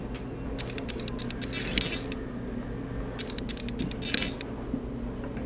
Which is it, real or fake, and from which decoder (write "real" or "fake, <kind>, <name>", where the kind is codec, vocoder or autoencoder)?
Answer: real